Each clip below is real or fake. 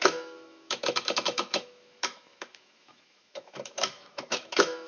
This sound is fake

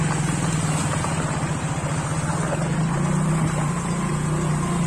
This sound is real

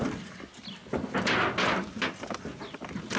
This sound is real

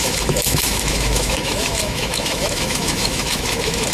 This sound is fake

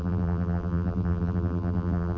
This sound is fake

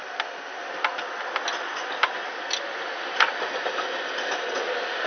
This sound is real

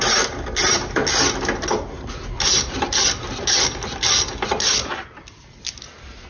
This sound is real